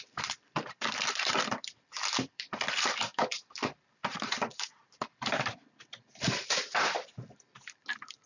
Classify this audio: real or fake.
fake